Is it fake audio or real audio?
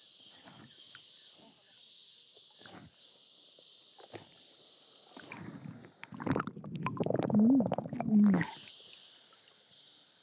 real